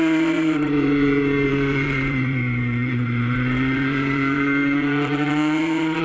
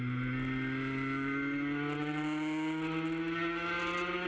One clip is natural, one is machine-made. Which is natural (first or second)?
second